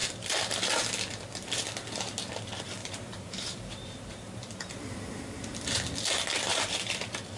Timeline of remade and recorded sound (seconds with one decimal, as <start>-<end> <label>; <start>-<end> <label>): 0.0-2.8 recorded; 2.8-4.8 remade; 4.8-6.5 recorded; 6.5-7.0 remade; 7.0-7.4 recorded